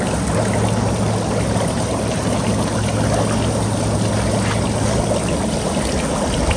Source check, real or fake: real